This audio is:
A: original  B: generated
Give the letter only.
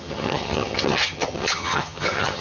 B